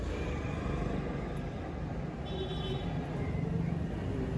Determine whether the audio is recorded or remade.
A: recorded